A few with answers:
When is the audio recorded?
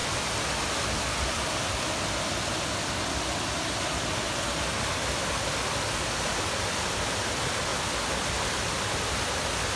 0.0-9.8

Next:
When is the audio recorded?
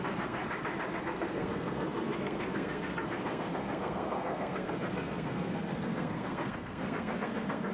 0.4-1.0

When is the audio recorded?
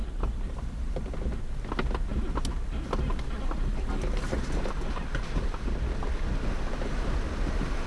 0.0-7.9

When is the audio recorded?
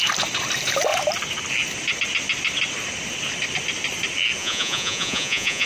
0.0-4.4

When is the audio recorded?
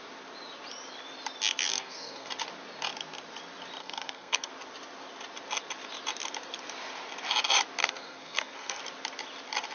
0.0-1.7; 2.3-3.8; 4.5-7.8; 8.8-9.7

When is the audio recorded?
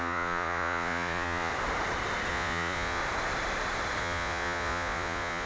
1.5-2.3; 3.0-4.0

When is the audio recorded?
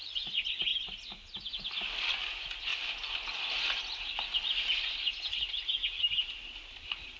0.0-7.2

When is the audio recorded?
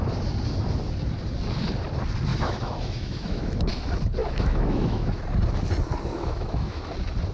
0.0-2.3; 3.7-4.2; 5.2-6.1; 6.8-7.3